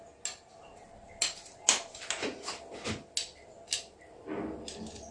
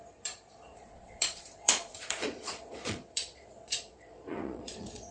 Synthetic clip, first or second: second